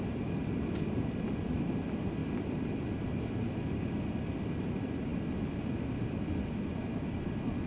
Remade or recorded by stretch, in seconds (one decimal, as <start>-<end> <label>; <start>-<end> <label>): 0.0-7.7 remade